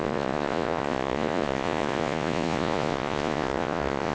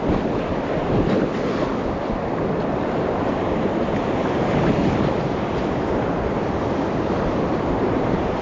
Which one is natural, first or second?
second